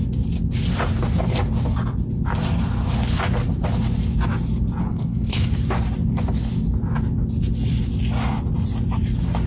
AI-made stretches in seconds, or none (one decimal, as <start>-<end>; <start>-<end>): 4.8-5.5